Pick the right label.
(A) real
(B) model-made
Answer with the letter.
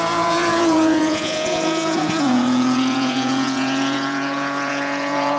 B